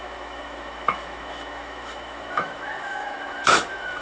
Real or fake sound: fake